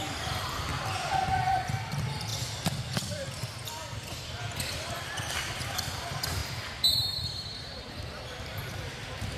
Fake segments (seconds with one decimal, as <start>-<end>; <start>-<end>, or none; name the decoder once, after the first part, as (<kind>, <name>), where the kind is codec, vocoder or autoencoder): 0.0-2.3 (vocoder, BigVGAN v2); 4.9-9.4